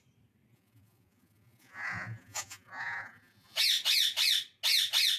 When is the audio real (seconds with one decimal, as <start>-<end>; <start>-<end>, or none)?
0.0-0.5; 3.6-5.2